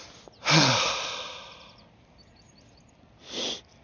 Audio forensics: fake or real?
real